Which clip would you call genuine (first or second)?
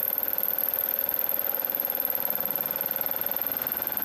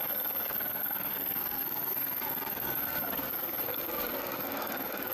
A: first